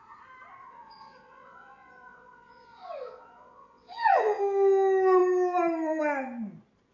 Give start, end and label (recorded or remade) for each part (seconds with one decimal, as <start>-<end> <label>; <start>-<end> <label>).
0.0-0.6 recorded; 0.6-4.4 remade; 4.4-6.9 recorded